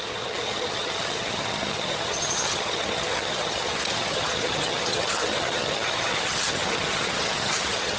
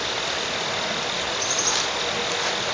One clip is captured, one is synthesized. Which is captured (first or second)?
second